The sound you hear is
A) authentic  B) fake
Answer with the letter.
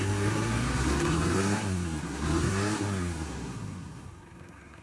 B